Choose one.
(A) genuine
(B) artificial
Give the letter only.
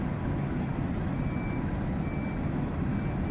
A